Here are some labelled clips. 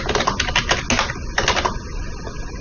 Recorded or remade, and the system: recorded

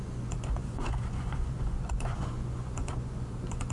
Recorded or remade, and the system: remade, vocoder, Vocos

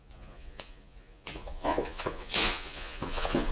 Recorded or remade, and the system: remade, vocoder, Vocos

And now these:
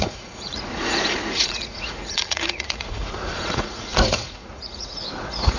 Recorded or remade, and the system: remade, vocoder, Vocos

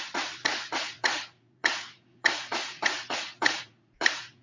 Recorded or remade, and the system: remade, vocoder, Vocos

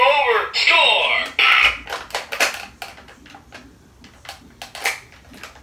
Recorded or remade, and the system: recorded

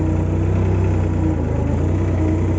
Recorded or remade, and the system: recorded